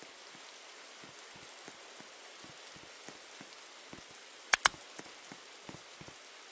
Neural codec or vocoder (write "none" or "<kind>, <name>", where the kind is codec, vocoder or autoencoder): none